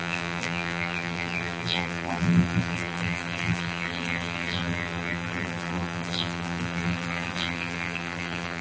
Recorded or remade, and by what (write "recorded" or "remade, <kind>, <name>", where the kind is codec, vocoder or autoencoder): remade, vocoder, BigVGAN v2